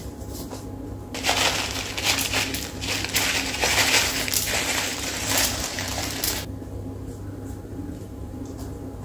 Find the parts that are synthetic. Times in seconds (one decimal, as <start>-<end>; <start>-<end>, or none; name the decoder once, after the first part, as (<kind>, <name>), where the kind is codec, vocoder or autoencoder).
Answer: 3.7-4.3 (vocoder, BigVGAN v2); 4.9-6.0; 7.7-8.6